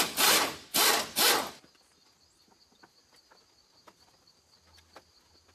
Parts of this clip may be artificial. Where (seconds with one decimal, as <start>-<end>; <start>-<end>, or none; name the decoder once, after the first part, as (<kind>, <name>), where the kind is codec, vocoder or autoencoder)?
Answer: none